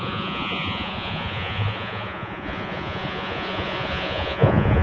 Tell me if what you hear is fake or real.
fake